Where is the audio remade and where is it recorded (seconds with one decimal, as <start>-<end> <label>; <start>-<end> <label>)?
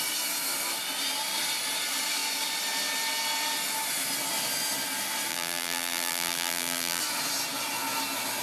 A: 0.0-5.3 recorded; 5.3-7.0 remade; 7.0-8.4 recorded